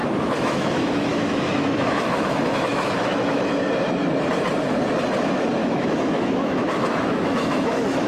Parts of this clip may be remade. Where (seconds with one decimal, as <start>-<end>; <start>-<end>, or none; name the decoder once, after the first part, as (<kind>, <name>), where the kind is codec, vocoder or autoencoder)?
0.0-3.5 (autoencoder, DAC-VAE); 5.6-8.1